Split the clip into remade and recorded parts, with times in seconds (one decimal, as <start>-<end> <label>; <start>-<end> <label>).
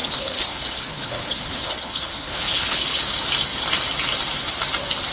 0.0-3.0 remade; 3.0-5.1 recorded